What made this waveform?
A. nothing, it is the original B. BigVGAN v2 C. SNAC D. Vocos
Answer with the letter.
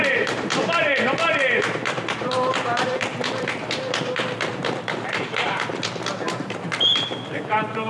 B